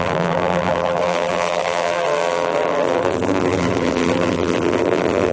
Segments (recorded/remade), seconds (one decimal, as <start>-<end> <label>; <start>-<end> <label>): 0.0-5.3 remade